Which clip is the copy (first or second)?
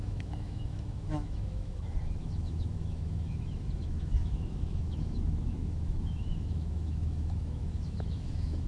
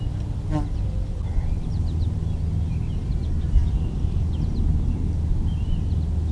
first